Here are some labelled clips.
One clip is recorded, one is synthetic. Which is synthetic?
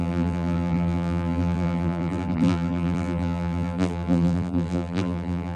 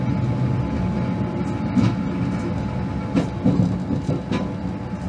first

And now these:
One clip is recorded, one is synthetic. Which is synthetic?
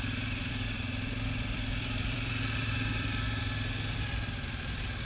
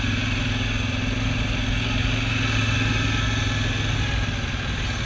first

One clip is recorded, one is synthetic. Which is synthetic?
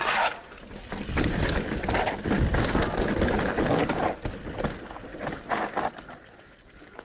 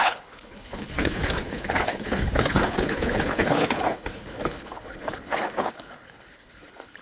second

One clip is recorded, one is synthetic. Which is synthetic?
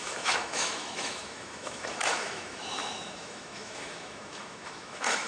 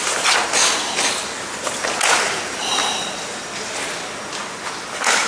first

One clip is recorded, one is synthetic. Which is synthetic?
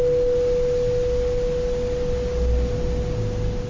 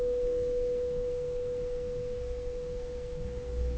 second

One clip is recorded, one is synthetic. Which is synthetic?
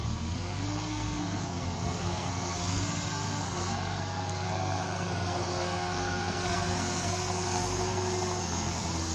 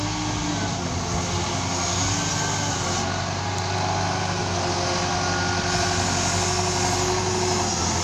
first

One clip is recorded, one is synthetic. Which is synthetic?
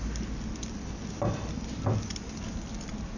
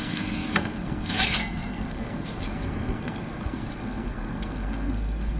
second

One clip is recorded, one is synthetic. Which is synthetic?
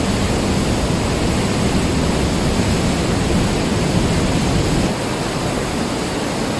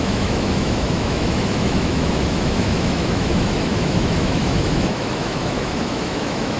second